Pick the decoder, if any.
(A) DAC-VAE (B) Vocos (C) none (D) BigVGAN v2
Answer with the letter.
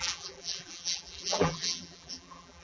D